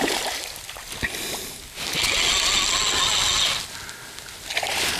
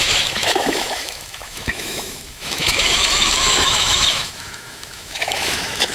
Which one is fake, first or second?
second